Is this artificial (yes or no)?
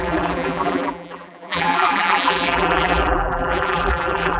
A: yes